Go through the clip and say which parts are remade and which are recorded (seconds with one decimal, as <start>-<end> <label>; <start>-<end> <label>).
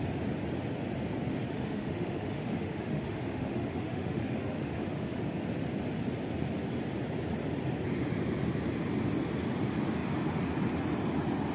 0.0-1.5 recorded; 1.5-5.2 remade; 5.2-11.5 recorded